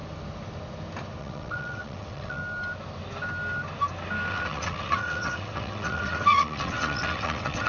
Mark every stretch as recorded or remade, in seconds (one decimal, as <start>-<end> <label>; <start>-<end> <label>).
0.0-1.2 recorded; 1.2-2.4 remade; 2.4-4.3 recorded; 4.3-7.7 remade